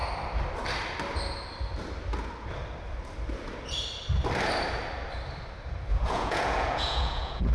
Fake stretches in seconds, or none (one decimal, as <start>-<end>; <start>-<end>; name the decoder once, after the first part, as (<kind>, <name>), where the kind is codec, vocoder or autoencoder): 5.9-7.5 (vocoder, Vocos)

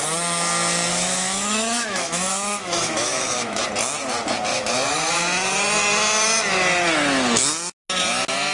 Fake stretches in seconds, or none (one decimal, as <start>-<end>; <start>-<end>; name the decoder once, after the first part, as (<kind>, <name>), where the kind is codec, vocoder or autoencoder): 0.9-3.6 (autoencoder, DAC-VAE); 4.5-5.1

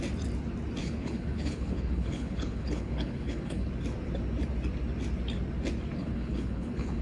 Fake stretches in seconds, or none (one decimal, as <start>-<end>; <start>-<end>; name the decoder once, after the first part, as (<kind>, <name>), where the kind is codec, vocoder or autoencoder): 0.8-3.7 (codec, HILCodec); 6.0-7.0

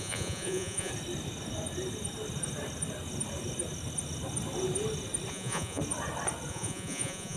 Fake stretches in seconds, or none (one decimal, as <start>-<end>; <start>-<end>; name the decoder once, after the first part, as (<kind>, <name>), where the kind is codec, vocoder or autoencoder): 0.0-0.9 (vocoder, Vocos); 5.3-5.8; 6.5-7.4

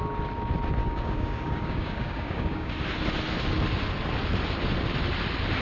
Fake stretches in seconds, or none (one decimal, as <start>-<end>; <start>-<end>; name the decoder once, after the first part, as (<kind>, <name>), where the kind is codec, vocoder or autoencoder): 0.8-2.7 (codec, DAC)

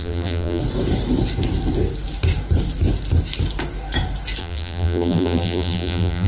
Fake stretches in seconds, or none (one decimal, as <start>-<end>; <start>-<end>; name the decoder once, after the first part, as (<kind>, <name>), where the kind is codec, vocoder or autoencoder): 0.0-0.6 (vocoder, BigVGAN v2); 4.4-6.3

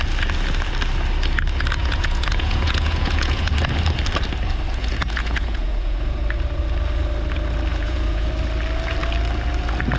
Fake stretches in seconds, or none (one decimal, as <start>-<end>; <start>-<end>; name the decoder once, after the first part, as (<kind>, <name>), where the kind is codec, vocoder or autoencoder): 1.8-3.5 (vocoder, Vocos); 4.8-6.2; 7.7-8.3